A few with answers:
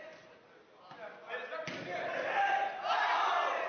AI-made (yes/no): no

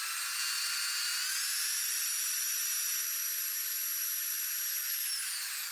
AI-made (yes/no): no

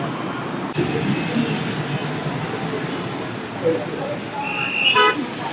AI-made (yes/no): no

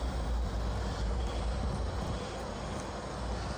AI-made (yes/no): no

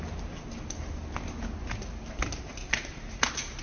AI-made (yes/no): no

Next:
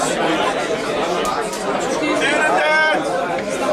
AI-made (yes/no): no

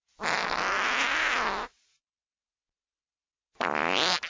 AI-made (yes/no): no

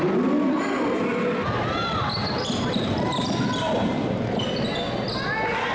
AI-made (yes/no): no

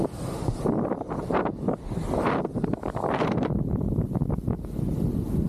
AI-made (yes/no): no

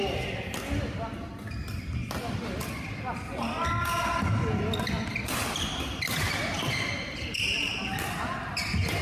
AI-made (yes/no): no